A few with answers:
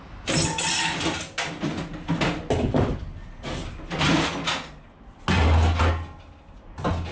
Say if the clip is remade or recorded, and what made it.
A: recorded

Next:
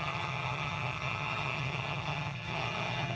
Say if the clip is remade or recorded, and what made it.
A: remade, vocoder, HiFi-GAN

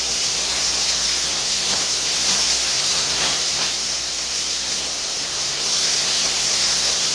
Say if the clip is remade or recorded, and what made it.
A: remade, codec, SNAC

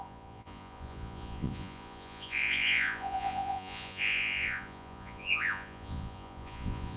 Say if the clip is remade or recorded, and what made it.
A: remade, vocoder, Vocos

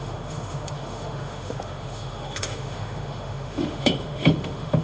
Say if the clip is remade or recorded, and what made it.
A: remade, autoencoder, DAC-VAE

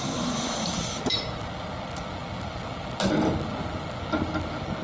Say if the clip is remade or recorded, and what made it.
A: recorded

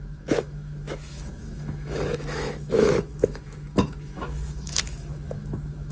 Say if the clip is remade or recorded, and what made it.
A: remade, autoencoder, DAC-VAE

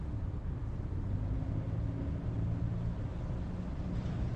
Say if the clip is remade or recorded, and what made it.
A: recorded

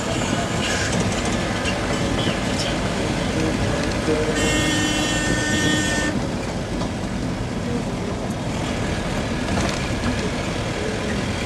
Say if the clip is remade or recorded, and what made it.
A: recorded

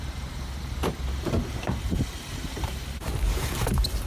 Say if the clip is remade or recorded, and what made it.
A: remade, vocoder, BigVGAN v2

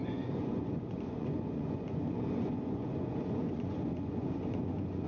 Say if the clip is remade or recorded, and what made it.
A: remade, vocoder, Vocos